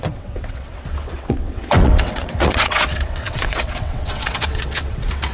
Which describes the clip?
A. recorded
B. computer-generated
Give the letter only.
B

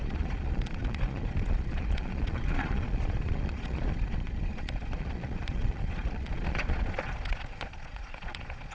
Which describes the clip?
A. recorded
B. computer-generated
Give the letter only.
B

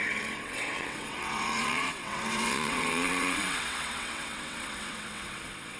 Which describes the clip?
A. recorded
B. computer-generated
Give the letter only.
B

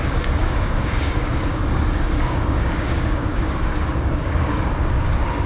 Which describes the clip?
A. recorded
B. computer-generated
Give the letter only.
B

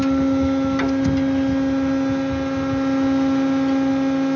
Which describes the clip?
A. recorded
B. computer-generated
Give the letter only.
A